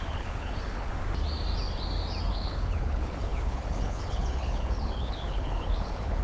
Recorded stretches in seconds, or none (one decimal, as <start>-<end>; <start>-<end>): 0.9-2.3